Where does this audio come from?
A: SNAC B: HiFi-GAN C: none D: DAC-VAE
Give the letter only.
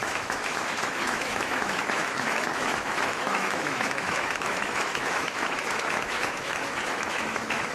D